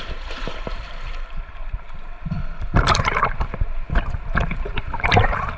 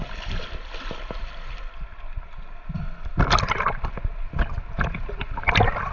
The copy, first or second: first